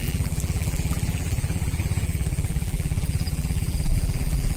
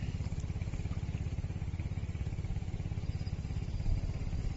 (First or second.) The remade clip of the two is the first